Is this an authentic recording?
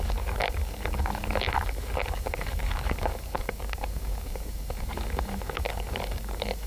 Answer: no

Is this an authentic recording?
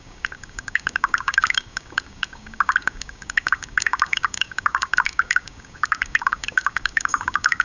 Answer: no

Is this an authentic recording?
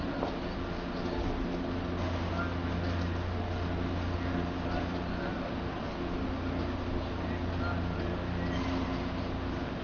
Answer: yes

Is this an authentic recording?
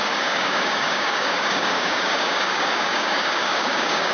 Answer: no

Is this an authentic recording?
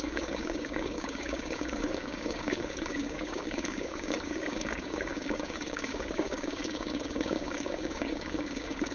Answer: no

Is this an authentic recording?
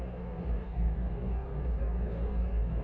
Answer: no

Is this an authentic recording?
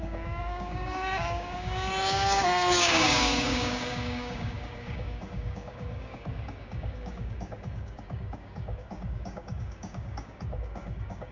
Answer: no